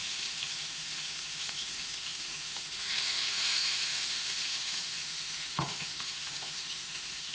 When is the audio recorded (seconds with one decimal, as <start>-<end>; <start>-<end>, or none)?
none